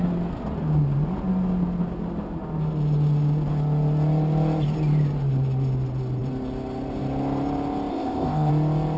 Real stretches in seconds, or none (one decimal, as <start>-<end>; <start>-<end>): 0.0-7.9; 8.5-9.0

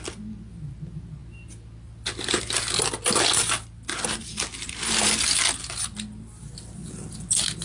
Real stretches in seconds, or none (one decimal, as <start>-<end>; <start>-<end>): 0.0-7.6

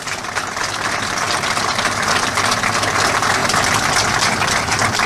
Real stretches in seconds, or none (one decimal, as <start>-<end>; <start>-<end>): 0.0-5.1

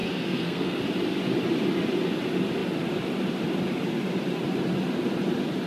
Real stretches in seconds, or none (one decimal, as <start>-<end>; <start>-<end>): 0.8-5.7